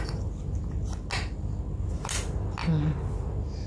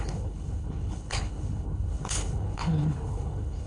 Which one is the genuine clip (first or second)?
first